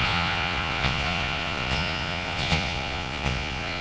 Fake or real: fake